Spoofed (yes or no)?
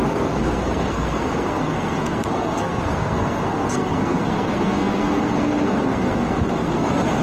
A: yes